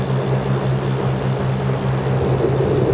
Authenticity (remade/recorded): recorded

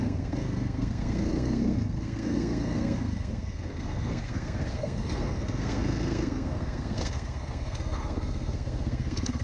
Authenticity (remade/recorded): remade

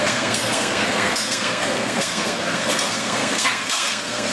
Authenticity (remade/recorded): remade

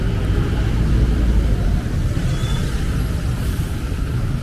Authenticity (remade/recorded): recorded